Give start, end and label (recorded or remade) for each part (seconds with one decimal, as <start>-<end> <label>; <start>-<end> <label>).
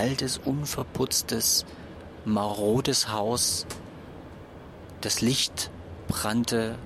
0.0-2.5 recorded; 2.5-4.1 remade; 4.1-6.9 recorded